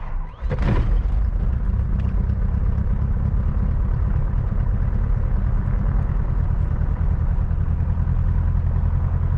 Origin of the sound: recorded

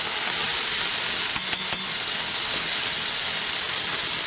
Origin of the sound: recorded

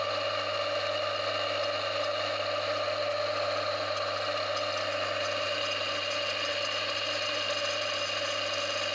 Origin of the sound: recorded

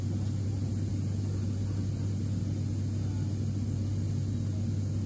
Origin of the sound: recorded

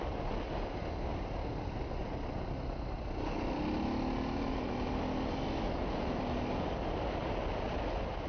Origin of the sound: recorded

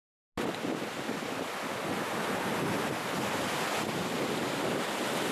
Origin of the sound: recorded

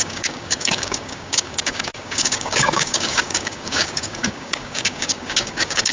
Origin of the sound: remade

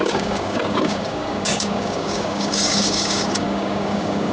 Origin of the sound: remade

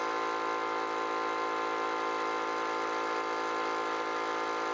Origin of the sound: recorded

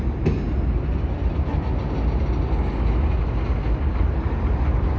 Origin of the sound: recorded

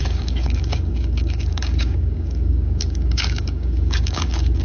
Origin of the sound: remade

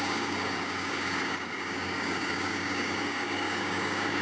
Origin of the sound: remade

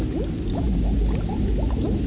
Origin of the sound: recorded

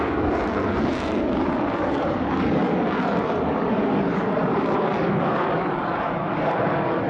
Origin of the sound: remade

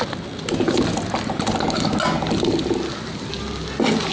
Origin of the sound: recorded